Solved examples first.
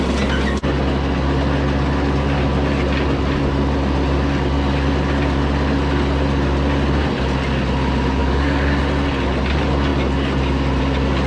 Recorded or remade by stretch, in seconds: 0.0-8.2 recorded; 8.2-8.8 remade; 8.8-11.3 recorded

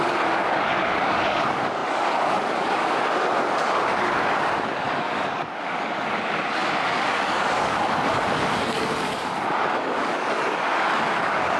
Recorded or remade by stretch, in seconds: 0.0-11.6 remade